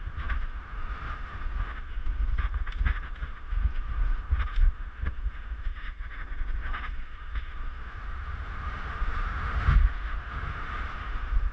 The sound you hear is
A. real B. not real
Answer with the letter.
B